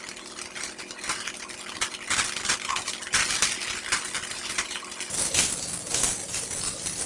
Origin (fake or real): real